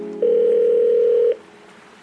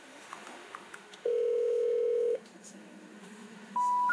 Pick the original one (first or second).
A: first